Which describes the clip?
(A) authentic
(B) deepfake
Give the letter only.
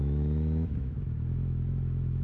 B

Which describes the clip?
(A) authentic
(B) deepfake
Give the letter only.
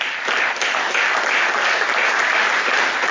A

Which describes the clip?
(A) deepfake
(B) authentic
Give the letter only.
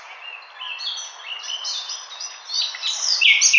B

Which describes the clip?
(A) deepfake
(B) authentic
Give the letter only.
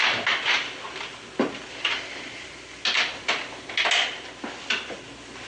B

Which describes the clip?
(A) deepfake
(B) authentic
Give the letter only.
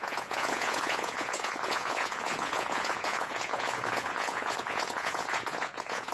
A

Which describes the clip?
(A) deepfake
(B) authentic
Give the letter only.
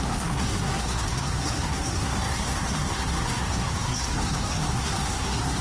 A